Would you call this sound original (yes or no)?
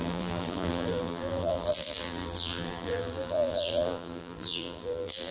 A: no